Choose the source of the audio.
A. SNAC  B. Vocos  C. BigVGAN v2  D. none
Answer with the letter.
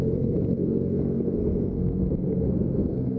A